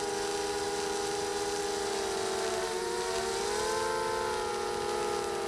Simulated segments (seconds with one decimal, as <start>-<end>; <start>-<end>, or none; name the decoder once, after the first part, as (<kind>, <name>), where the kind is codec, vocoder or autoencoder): none